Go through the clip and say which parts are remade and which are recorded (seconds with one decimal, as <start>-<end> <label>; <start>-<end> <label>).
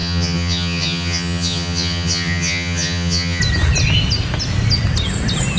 0.0-3.4 remade; 3.4-5.6 recorded